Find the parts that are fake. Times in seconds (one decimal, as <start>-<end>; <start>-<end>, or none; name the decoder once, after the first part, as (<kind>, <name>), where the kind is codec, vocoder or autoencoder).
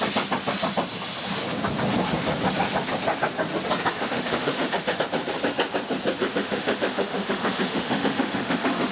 3.9-5.0 (autoencoder, DAC-VAE); 6.2-8.9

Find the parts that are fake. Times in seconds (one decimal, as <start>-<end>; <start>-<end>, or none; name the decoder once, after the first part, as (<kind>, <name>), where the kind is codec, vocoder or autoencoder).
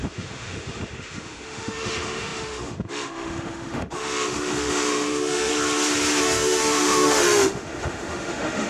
0.0-5.5 (autoencoder, DAC-VAE); 6.2-8.7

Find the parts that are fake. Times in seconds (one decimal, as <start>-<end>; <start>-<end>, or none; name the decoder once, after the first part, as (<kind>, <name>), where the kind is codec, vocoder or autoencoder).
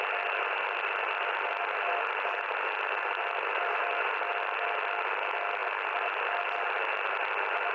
none